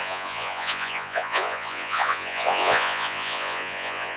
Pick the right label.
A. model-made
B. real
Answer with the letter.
A